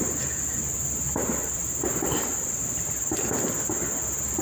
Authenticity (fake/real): real